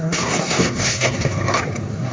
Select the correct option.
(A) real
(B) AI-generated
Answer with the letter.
B